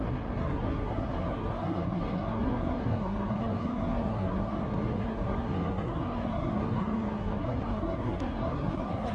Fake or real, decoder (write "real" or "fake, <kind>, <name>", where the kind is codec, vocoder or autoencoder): fake, codec, SNAC